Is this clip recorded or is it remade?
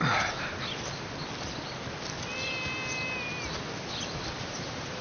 recorded